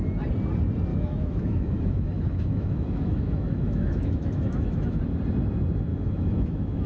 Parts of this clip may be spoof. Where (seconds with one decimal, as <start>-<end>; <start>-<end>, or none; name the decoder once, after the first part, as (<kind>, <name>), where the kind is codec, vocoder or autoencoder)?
0.9-5.0 (autoencoder, DAC-VAE); 5.9-6.9